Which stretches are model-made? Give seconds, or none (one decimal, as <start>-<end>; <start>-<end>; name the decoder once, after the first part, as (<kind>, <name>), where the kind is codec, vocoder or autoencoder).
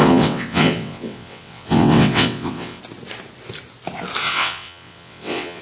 0.0-2.8 (vocoder, WaveNeXt); 4.2-5.6